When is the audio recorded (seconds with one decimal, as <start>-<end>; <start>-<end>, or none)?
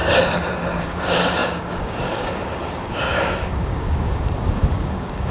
0.0-0.8